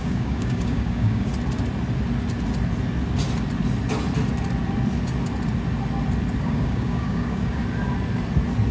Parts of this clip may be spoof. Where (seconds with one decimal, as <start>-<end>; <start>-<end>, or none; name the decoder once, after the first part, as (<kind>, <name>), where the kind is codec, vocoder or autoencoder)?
0.0-1.3 (codec, DAC); 6.4-7.6